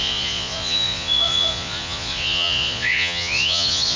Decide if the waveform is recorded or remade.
remade